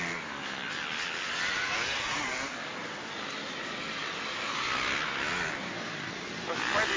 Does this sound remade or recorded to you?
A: recorded